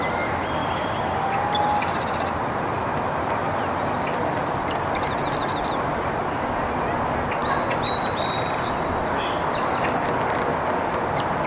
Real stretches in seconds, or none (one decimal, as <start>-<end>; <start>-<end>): 0.0-0.6; 2.5-11.5